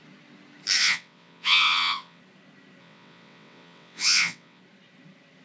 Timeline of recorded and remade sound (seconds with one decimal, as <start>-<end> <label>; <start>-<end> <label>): 0.0-0.8 recorded; 0.8-2.2 remade; 2.2-2.8 recorded; 2.8-4.6 remade; 4.6-5.4 recorded